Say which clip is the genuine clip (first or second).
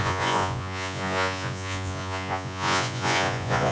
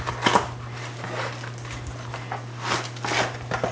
second